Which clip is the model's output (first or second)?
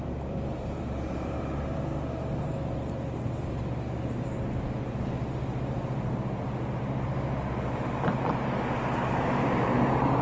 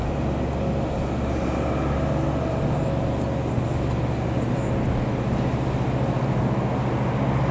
first